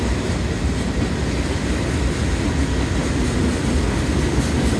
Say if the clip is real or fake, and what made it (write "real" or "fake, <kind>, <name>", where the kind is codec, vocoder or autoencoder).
real